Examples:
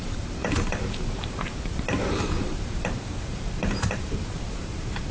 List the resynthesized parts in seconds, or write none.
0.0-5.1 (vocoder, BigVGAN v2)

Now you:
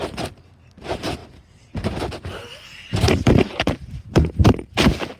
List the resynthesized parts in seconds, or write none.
0.0-5.2 (vocoder, BigVGAN v2)

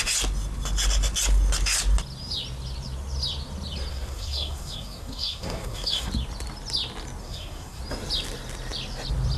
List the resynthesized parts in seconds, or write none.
3.9-6.1 (codec, SNAC); 7.2-7.8